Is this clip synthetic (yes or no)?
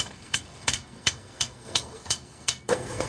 yes